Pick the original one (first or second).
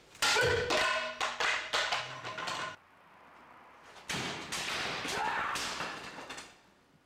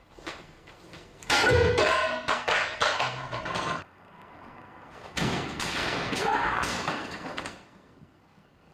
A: first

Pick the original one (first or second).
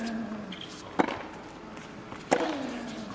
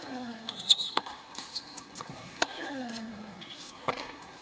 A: first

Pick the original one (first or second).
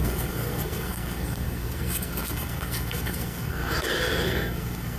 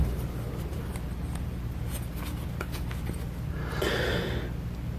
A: second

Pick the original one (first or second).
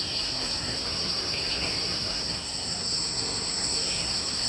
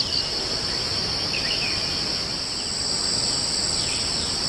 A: second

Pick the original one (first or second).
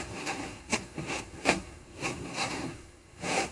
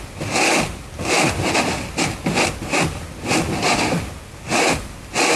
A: second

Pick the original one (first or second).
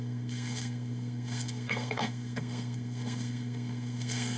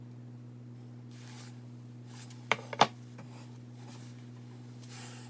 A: second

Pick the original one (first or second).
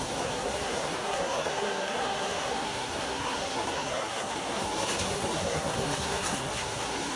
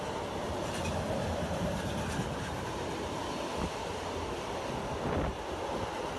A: second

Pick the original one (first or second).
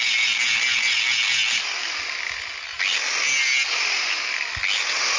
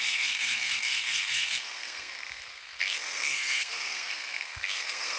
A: first